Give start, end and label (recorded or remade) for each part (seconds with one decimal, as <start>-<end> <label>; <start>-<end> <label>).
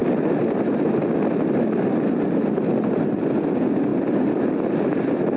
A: 0.0-5.4 recorded